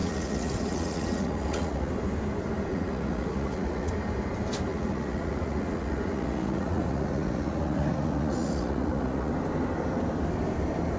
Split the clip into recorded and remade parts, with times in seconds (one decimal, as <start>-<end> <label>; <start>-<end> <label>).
0.0-1.9 remade; 1.9-2.7 recorded; 2.7-3.9 remade; 3.9-4.7 recorded; 4.7-9.3 remade; 9.3-11.0 recorded